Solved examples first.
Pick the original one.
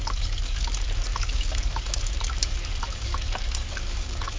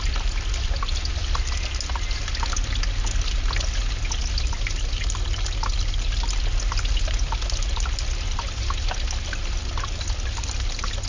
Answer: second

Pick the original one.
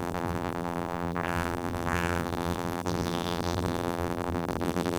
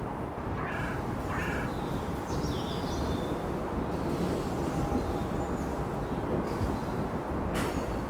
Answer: second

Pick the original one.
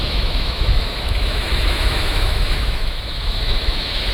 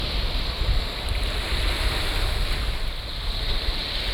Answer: second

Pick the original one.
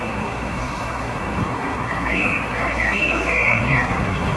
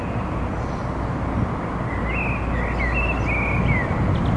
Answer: second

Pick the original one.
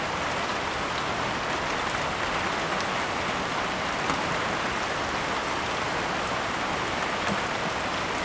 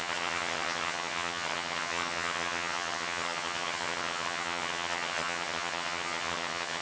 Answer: first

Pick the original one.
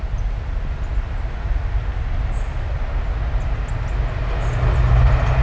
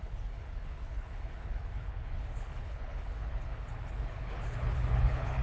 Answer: first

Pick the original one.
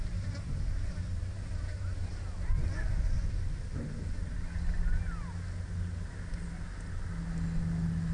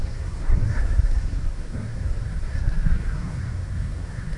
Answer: first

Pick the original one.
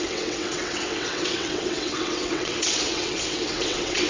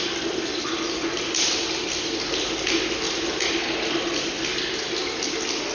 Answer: second